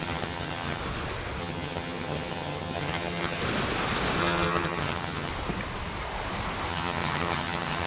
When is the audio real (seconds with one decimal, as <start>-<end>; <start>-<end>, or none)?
0.8-1.4; 3.4-4.2; 5.3-6.7